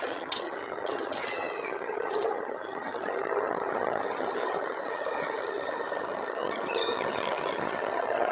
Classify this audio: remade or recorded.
remade